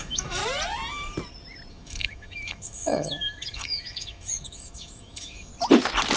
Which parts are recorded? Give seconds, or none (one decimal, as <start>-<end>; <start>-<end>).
0.4-1.7; 5.5-6.2